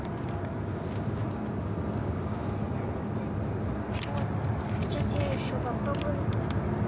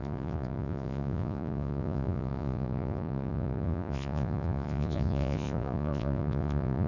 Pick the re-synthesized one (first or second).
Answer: second